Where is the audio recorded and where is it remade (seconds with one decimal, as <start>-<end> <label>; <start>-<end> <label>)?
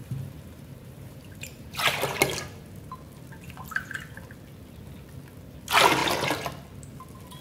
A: 0.0-1.8 remade; 1.8-7.4 recorded